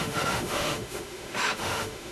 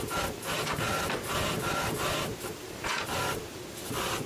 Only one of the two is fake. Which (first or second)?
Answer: first